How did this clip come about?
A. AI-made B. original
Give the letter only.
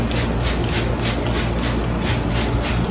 B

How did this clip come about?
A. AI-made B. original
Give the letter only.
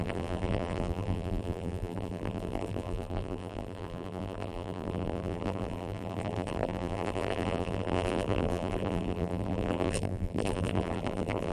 A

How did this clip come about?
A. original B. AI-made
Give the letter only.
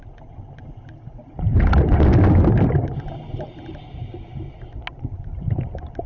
A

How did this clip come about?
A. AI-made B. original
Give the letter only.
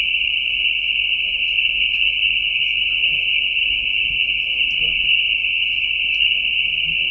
B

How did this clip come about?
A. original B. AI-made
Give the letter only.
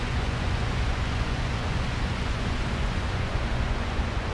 B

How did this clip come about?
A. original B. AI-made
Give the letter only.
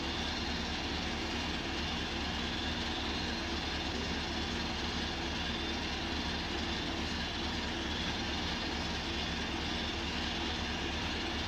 A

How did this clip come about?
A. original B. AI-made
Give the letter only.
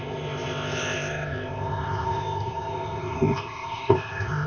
B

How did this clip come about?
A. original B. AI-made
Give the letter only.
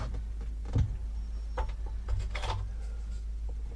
A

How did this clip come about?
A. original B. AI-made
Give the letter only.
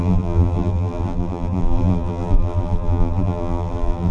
B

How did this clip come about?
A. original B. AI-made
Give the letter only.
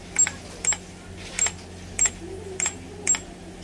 A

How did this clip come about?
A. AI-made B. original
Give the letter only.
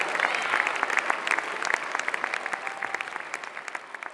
B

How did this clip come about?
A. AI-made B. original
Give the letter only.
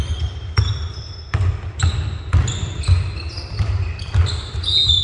B